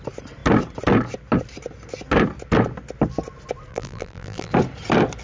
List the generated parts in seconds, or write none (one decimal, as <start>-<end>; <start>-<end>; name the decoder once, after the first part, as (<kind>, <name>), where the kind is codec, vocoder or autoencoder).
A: 3.7-4.5 (vocoder, BigVGAN v2)